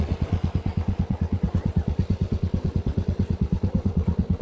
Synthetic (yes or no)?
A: yes